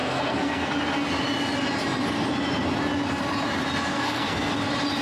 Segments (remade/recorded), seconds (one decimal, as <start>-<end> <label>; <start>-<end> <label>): 0.0-0.7 remade; 0.7-3.9 recorded; 3.9-4.5 remade; 4.5-5.0 recorded